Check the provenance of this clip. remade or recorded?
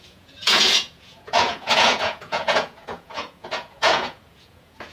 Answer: remade